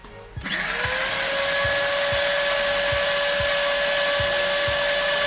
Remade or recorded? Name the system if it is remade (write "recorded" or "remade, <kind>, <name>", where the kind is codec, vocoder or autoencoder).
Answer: recorded